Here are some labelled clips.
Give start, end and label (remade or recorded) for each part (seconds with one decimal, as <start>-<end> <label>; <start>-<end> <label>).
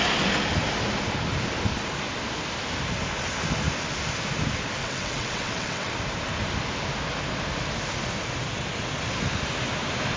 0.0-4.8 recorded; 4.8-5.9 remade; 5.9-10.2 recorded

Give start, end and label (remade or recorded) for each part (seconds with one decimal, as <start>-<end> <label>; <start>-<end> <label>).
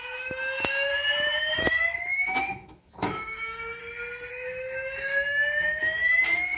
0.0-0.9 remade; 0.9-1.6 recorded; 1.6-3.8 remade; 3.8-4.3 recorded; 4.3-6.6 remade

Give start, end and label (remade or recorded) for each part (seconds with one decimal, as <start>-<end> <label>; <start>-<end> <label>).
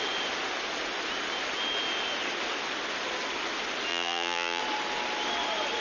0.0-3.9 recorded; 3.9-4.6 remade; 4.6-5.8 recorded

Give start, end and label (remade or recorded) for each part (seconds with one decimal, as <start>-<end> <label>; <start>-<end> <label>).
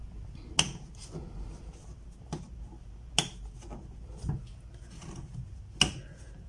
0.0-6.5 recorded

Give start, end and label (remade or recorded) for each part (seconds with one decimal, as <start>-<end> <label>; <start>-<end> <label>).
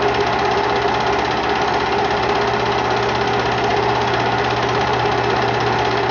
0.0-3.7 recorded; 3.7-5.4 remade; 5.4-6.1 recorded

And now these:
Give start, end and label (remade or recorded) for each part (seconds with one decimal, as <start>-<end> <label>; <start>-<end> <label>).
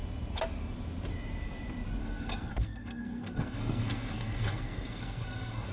0.0-2.0 recorded; 2.0-5.7 remade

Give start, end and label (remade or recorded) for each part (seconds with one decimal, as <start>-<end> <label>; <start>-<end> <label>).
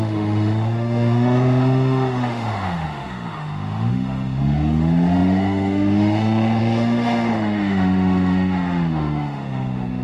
0.0-10.0 remade